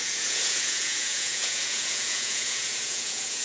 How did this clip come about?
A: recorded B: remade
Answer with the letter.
B